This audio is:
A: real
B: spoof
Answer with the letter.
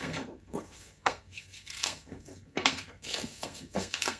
B